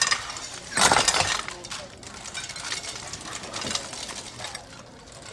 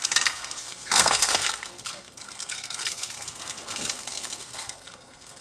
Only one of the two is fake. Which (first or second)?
second